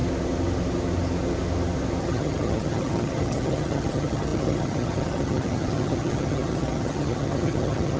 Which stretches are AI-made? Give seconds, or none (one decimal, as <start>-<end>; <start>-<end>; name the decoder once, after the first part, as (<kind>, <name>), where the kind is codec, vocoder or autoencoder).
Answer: 2.0-8.0 (vocoder, HiFi-GAN)